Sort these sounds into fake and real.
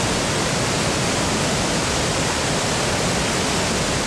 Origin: real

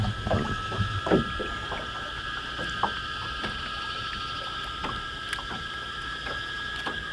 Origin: real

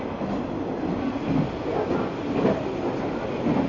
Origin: real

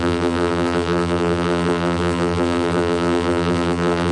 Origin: fake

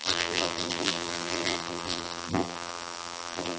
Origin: fake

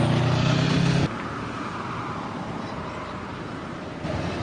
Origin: fake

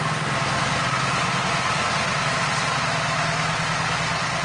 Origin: real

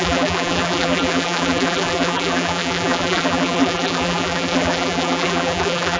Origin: fake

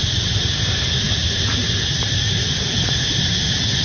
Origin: real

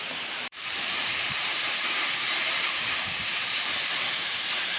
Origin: fake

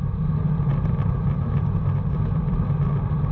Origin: real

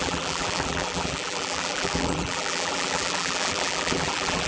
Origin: fake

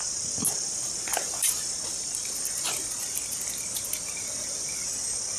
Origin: real